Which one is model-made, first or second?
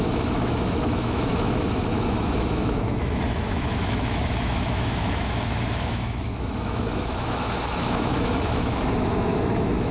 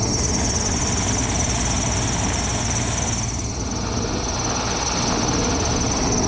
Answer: first